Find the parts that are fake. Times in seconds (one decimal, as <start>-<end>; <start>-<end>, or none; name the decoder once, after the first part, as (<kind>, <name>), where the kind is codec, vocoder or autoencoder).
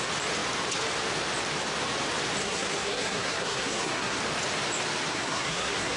2.4-4.2 (codec, SNAC); 5.1-6.0